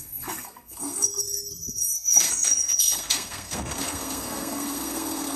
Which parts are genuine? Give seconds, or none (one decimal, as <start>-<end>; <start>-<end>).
none